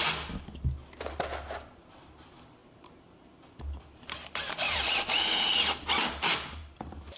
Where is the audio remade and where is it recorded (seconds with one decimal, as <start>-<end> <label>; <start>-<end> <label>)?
0.0-2.6 recorded; 2.6-7.2 remade

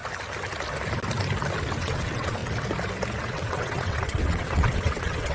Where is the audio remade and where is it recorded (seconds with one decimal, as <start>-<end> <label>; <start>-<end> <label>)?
0.0-1.7 recorded; 1.7-2.4 remade; 2.4-3.3 recorded; 3.3-5.3 remade

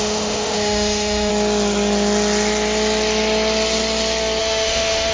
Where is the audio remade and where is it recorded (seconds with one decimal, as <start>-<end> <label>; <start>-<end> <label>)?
0.0-1.3 remade; 1.3-4.4 recorded; 4.4-5.1 remade

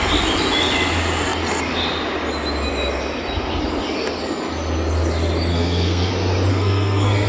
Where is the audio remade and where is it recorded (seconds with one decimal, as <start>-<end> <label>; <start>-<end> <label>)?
0.0-5.5 recorded; 5.5-6.1 remade; 6.1-6.5 recorded; 6.5-7.3 remade

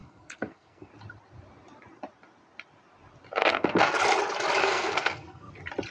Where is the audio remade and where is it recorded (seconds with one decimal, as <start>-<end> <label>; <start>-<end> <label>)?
0.0-0.9 remade; 0.9-3.4 recorded; 3.4-4.0 remade; 4.0-4.6 recorded; 4.6-5.5 remade; 5.5-5.9 recorded

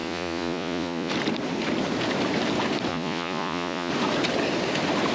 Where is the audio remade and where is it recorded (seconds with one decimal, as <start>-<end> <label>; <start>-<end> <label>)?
0.0-1.1 remade; 1.1-2.9 recorded; 2.9-3.9 remade; 3.9-5.1 recorded